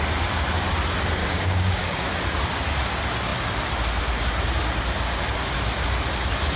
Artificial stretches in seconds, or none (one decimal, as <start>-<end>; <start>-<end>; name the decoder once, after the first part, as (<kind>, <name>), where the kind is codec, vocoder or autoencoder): 1.2-2.0 (codec, DAC)